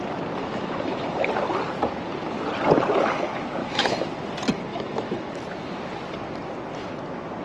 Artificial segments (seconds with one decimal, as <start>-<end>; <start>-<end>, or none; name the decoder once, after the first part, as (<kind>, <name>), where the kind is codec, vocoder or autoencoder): 0.4-1.3 (autoencoder, DAC-VAE); 3.6-4.1; 4.7-5.3